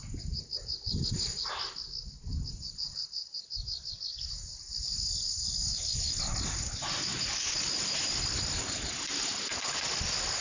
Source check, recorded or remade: recorded